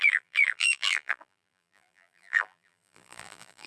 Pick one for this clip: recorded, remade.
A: remade